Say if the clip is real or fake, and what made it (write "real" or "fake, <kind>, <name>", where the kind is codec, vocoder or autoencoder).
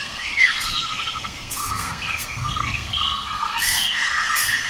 fake, codec, SNAC